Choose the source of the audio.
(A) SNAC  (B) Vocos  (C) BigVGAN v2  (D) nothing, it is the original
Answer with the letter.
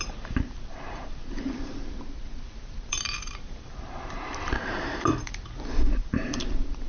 C